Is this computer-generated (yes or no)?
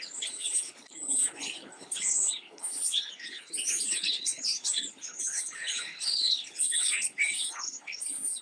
yes